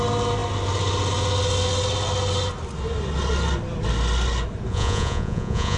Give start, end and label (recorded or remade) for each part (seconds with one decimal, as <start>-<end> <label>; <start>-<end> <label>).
0.0-4.7 recorded; 4.7-5.8 remade